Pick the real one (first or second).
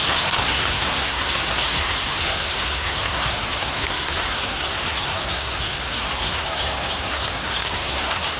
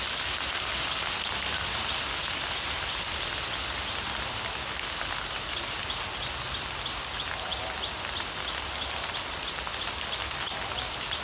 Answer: second